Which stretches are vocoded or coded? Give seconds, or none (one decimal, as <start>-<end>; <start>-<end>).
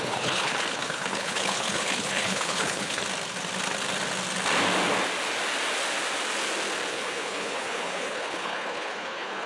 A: 0.0-3.0; 6.9-9.5